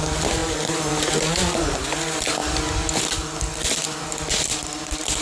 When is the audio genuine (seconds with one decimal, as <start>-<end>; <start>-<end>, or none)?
0.0-5.2